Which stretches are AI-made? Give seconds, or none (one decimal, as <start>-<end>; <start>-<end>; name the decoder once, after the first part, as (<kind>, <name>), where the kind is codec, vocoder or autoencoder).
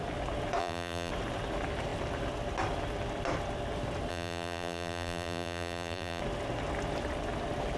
0.6-1.1 (vocoder, BigVGAN v2); 4.1-6.2